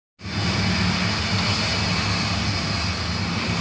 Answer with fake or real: real